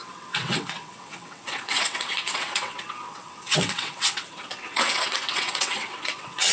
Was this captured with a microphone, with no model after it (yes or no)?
no